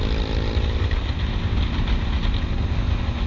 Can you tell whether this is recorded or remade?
recorded